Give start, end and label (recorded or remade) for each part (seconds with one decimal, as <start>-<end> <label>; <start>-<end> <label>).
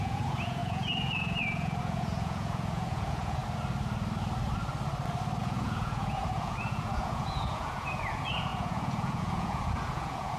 0.0-3.4 remade; 3.4-5.4 recorded; 5.4-10.4 remade